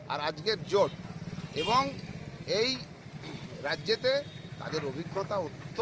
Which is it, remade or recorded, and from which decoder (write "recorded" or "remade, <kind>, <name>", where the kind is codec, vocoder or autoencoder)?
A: recorded